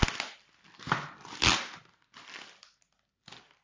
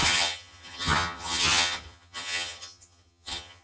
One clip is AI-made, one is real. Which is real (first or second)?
first